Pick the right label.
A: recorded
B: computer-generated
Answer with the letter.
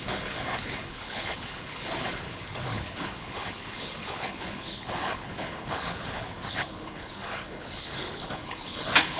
B